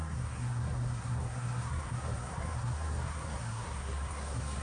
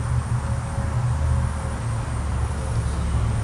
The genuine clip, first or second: second